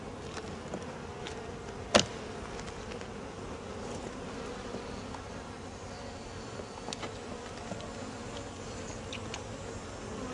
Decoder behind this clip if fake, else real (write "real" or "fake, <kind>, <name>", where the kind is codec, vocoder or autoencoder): real